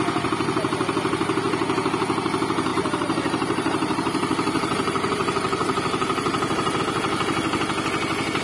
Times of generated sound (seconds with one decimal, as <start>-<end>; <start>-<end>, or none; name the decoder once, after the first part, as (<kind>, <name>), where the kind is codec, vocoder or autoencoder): 2.7-6.8 (vocoder, BigVGAN v2)